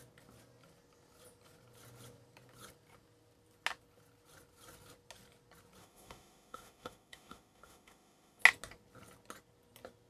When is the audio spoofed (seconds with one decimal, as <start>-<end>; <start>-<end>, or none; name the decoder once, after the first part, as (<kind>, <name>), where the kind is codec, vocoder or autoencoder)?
5.8-8.4 (autoencoder, DAC-VAE)